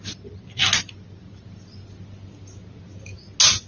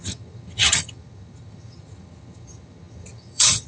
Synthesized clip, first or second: second